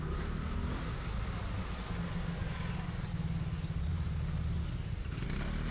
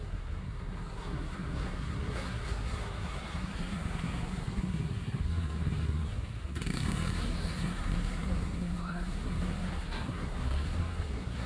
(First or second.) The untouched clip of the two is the first